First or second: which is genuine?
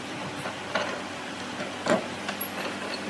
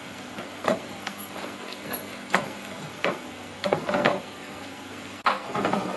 first